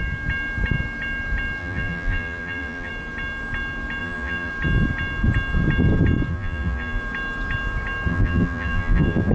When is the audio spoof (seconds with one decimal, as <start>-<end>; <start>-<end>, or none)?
1.6-2.9; 4.0-4.5; 6.3-7.0; 8.1-9.3